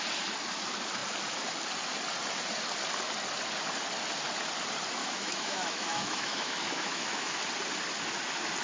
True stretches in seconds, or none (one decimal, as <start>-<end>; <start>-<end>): 0.0-5.0; 7.4-8.6